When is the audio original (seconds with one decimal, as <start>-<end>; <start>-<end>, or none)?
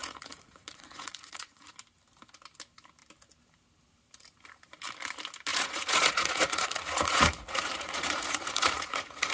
1.7-5.5